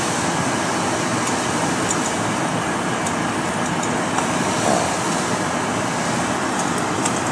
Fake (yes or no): no